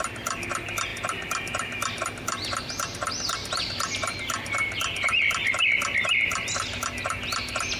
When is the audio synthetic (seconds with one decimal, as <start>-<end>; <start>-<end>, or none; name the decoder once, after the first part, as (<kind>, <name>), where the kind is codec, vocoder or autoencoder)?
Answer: none